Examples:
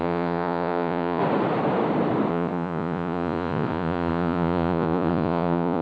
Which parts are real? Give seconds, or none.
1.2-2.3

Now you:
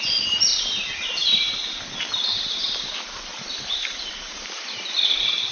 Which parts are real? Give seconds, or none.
0.0-3.3; 4.8-5.5

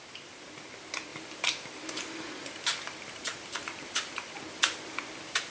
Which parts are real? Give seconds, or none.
0.0-5.5

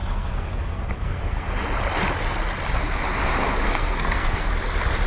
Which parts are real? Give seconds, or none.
1.5-3.6; 4.5-5.1